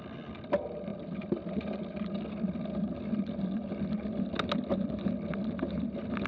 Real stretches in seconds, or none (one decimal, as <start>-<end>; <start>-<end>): 0.0-6.3